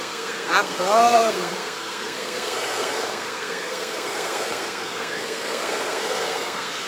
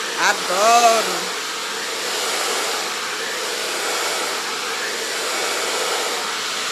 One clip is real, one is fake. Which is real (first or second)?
second